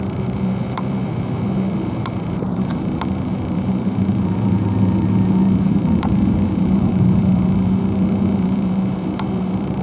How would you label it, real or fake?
fake